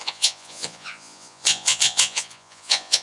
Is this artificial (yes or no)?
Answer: yes